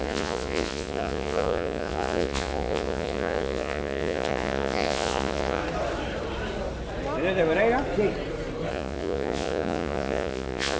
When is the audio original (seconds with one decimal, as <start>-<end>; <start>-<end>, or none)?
5.6-8.7